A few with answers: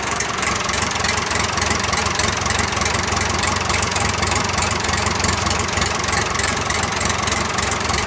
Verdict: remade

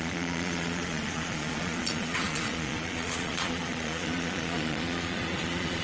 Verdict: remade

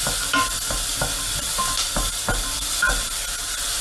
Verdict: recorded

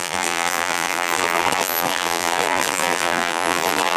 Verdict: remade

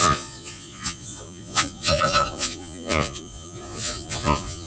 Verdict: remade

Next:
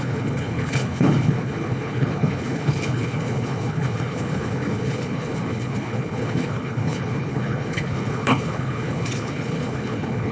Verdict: remade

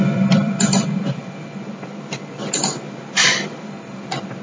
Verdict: remade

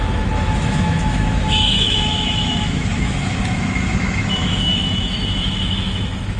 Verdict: remade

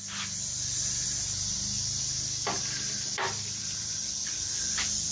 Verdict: recorded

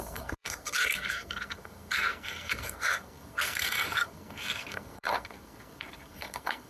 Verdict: remade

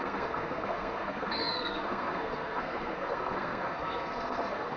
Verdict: remade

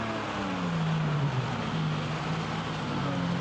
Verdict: recorded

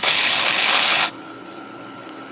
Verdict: remade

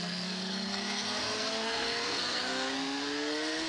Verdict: remade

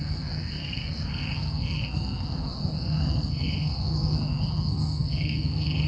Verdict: remade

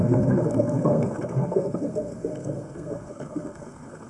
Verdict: remade